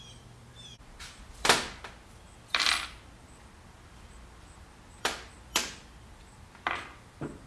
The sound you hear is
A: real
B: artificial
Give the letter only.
A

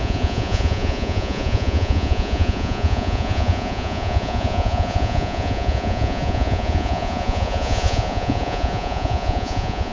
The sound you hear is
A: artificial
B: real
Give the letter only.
A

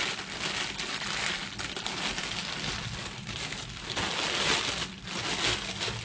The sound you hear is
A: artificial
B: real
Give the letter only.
B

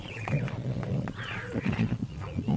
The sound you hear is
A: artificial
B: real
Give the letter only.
A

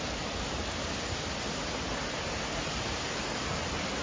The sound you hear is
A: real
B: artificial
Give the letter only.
A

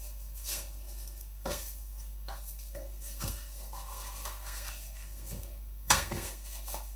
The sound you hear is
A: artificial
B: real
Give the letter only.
A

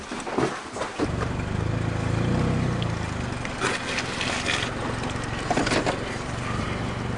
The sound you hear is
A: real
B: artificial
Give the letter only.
A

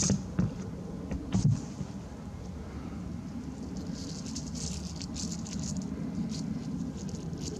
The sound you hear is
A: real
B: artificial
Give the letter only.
A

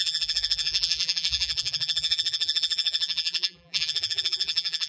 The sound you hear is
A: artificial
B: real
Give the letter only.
A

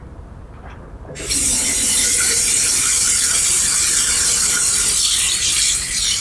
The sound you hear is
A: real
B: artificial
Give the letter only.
B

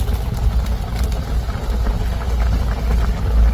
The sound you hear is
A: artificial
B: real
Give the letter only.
B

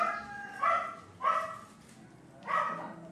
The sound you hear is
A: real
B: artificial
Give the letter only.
A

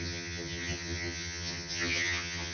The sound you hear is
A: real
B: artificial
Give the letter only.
B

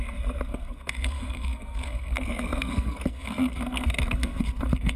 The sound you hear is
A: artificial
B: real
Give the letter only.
A